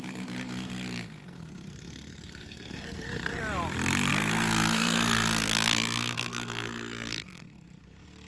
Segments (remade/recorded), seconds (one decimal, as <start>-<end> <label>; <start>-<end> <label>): 0.0-3.4 remade; 3.4-4.1 recorded; 4.1-8.3 remade